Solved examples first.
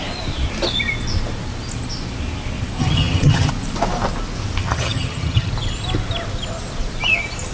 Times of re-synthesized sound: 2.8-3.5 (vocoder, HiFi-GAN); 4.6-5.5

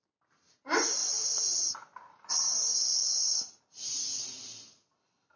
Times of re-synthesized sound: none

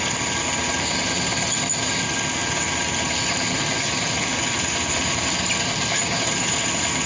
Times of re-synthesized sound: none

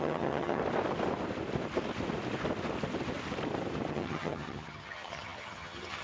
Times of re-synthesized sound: 0.0-0.6 (vocoder, HiFi-GAN); 3.9-6.0

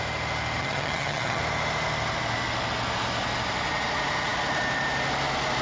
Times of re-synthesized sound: 0.6-1.4 (vocoder, HiFi-GAN)

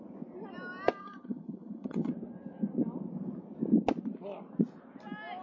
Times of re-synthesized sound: 1.0-2.1 (vocoder, HiFi-GAN)

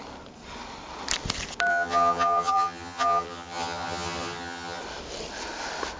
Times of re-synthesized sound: 1.7-4.8 (vocoder, HiFi-GAN)